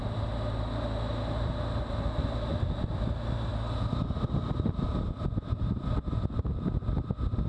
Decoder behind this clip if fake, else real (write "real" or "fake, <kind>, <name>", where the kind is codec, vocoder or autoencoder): real